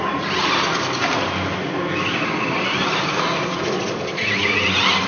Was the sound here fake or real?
real